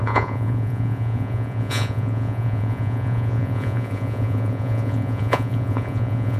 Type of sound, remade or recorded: remade